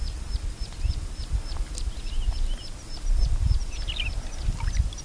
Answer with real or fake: real